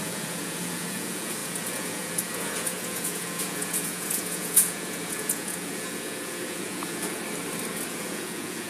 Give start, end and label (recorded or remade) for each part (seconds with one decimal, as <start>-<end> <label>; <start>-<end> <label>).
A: 0.0-7.2 remade; 7.2-7.7 recorded; 7.7-8.7 remade